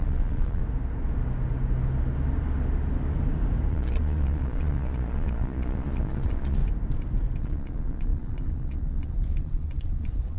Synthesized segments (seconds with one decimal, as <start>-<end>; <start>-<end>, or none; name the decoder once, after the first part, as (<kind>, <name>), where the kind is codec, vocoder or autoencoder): 0.0-0.6 (vocoder, Vocos); 3.7-6.6; 7.4-10.4